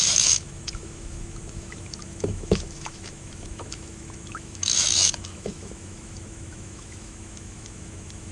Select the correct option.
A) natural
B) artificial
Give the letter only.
B